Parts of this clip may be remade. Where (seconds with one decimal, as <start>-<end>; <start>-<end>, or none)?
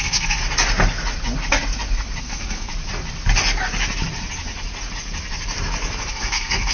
0.0-0.4; 2.2-2.7; 6.1-6.7